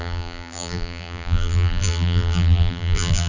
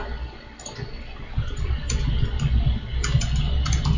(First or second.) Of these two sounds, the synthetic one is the first